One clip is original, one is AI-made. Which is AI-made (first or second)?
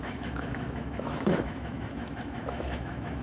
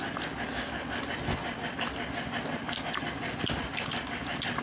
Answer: first